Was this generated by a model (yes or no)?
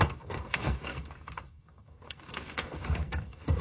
yes